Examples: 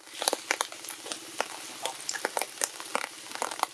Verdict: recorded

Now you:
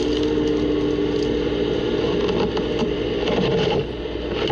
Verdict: recorded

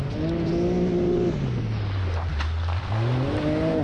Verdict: recorded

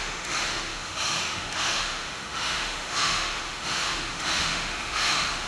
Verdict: remade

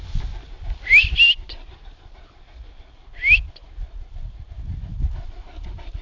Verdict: recorded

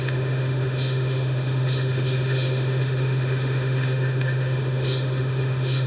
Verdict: remade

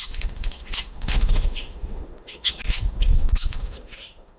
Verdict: remade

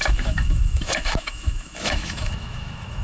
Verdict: remade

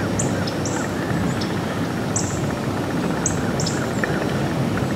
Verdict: recorded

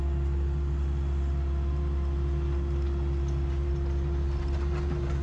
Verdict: recorded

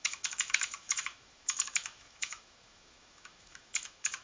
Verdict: remade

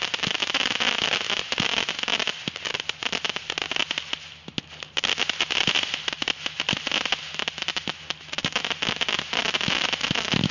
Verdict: recorded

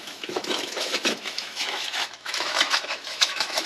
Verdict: remade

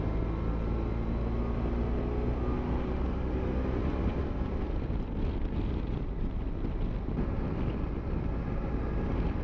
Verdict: recorded